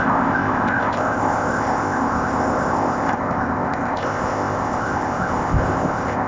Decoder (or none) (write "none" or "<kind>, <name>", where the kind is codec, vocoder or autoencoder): codec, ZipCodec